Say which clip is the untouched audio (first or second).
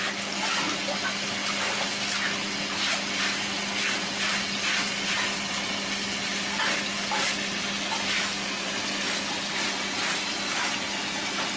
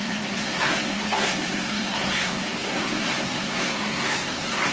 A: first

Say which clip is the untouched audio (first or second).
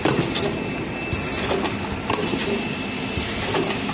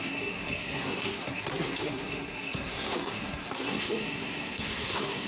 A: first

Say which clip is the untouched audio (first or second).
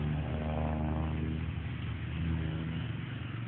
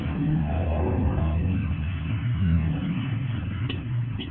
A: first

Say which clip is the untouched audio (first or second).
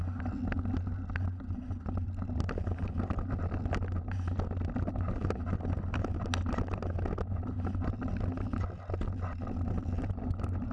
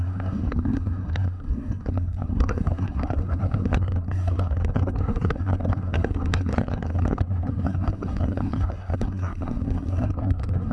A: first